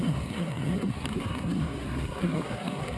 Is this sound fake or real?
fake